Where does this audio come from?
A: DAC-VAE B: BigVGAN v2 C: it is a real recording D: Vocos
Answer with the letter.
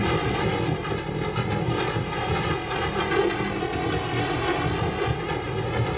C